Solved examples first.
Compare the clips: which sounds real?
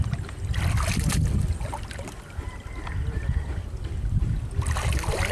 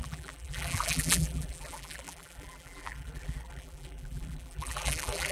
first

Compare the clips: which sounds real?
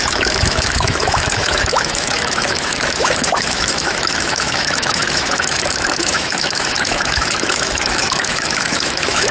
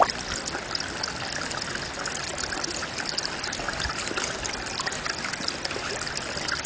second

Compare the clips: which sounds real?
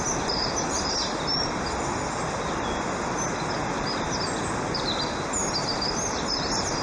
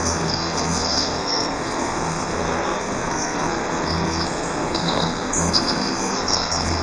first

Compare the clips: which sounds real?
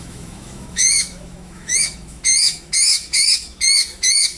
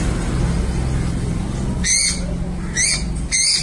second